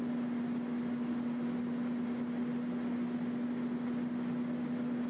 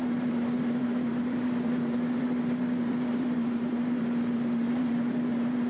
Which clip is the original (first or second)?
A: first